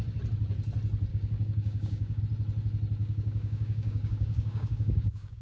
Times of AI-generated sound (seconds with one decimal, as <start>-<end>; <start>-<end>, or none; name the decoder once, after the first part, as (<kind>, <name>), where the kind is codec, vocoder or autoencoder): 1.1-2.2 (codec, DAC); 3.0-5.4